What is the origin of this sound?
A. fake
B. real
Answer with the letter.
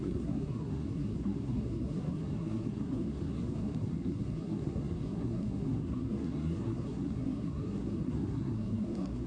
A